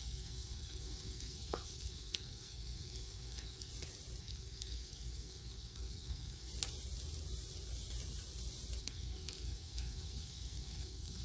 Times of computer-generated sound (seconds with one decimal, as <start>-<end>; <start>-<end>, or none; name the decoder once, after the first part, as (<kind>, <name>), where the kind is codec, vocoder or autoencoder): 0.0-3.7 (codec, SNAC); 4.2-6.5; 8.8-11.2